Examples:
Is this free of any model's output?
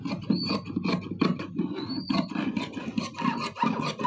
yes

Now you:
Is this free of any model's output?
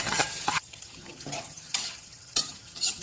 no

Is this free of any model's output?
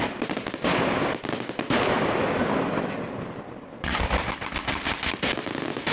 yes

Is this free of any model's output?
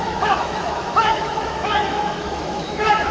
no